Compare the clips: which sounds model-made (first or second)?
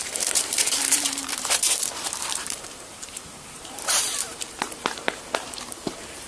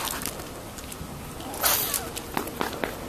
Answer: first